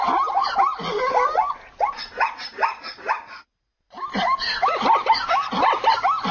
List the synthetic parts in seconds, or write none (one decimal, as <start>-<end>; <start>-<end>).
none